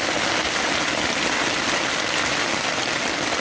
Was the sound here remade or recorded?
recorded